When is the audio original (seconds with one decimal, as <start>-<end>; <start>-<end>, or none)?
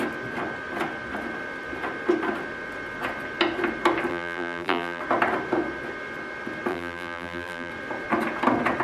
0.0-4.1; 5.0-6.7; 7.7-8.8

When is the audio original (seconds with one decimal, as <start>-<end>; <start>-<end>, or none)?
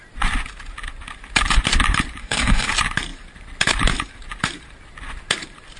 0.0-2.2; 2.7-5.8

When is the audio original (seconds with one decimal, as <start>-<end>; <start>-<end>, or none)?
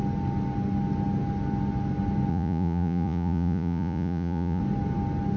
0.0-2.3; 4.6-5.4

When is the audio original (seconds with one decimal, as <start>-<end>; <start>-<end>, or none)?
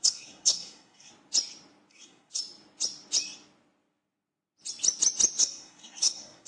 1.1-1.9; 2.4-5.4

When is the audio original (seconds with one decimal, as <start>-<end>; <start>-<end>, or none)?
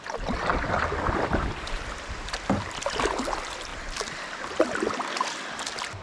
0.0-0.5; 3.3-3.7; 4.4-6.0